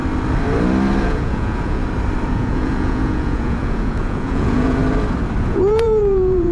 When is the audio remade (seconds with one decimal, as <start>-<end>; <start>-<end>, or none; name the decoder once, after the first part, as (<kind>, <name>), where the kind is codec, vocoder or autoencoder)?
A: 1.0-1.8 (vocoder, Vocos); 2.3-4.8; 5.4-6.5